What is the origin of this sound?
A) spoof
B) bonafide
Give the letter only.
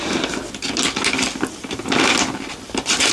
B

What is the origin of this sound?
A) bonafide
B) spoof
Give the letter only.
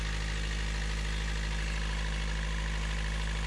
A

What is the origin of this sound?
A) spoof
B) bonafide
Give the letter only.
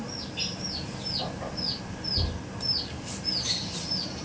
B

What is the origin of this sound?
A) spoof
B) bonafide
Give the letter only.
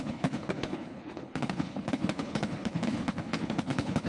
A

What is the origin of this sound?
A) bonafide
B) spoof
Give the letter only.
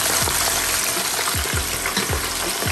A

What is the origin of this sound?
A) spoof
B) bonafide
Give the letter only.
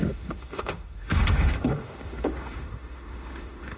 A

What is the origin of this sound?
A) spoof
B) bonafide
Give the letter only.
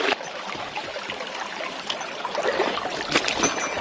B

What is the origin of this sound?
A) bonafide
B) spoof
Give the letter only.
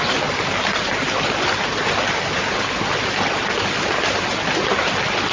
A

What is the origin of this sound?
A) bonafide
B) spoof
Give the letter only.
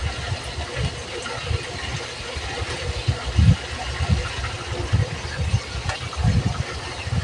A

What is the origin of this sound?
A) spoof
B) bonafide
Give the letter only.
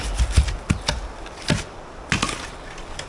B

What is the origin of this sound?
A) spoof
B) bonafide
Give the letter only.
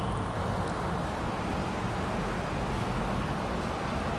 B